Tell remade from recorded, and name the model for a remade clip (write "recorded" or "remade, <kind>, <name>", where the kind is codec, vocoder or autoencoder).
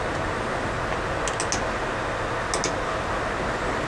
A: recorded